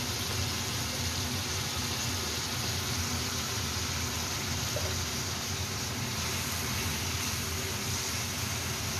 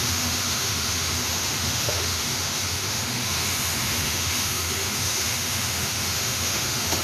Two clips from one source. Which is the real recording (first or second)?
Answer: first